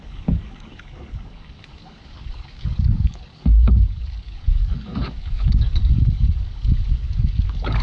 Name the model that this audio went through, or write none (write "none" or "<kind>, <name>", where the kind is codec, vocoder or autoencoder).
codec, DAC